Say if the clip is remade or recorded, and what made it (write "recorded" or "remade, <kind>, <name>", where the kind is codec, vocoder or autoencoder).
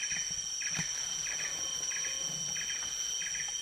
recorded